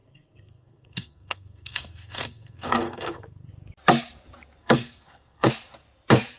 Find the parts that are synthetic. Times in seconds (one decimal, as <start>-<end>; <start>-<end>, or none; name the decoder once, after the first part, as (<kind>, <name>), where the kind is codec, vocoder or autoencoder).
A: 0.0-3.5 (codec, SNAC); 4.6-5.5